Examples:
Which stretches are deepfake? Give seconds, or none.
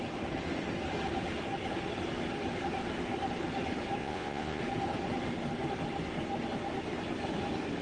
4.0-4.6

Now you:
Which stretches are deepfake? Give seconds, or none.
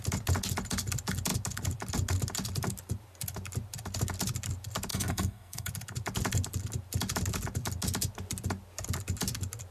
4.9-5.7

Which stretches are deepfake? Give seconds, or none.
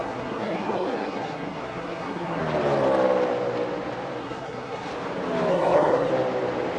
0.0-2.4; 4.2-4.9; 5.5-6.1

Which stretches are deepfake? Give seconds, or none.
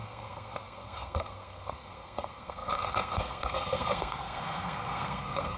0.0-5.6